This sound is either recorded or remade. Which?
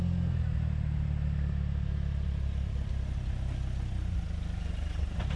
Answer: recorded